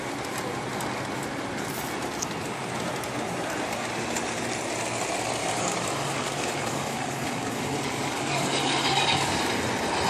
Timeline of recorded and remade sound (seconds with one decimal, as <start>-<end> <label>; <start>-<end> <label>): 0.0-5.4 recorded; 5.4-9.5 remade; 9.5-10.1 recorded